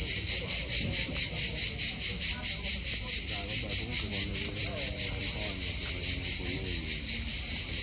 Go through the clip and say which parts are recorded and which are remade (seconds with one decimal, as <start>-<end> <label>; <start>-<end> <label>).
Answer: 0.0-4.3 recorded; 4.3-5.7 remade; 5.7-7.8 recorded